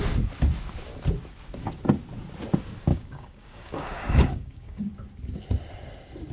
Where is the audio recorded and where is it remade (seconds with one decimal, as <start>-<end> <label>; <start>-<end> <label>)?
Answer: 0.0-2.9 recorded; 2.9-4.9 remade; 4.9-6.3 recorded